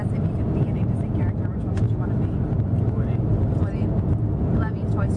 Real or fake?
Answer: real